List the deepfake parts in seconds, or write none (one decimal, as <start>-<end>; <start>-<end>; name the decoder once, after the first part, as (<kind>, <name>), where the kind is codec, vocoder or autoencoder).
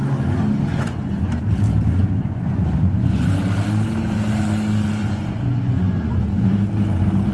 0.7-1.3 (vocoder, Vocos); 2.0-3.3; 5.0-6.5